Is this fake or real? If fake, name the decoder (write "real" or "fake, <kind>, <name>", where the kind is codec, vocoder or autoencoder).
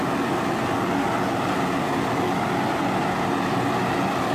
real